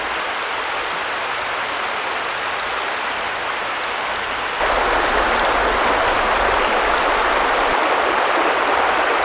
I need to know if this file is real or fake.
real